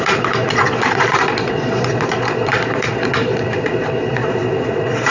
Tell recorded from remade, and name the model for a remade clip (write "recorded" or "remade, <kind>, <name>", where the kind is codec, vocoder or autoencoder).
remade, vocoder, Vocos